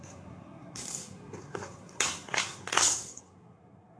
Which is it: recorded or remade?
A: remade